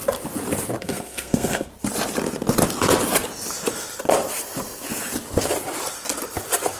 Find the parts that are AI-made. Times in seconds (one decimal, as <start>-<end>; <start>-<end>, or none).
0.8-1.7